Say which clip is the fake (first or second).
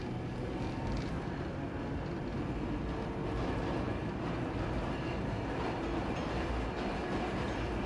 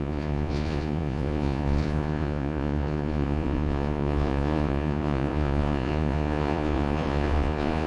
second